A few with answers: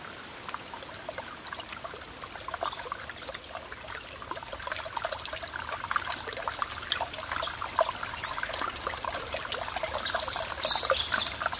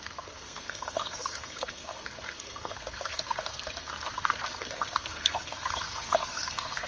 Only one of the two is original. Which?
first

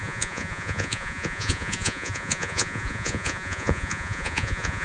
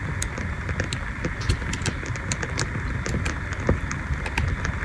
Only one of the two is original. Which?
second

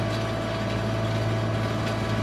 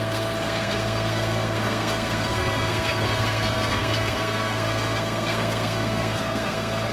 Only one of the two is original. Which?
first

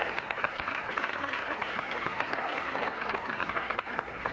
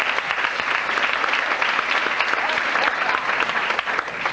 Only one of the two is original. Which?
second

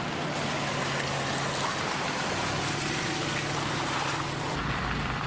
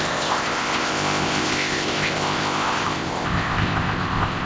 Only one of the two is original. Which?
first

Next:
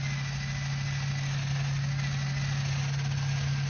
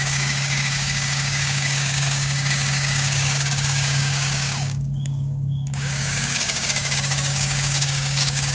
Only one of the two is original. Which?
first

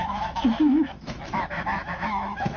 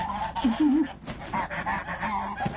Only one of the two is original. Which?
second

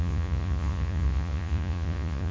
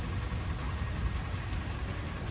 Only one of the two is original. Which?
second